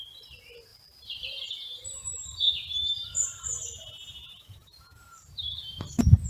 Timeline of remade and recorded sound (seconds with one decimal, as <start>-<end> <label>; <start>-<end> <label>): 0.0-0.7 recorded; 0.7-1.5 remade; 1.5-2.1 recorded; 2.1-6.3 remade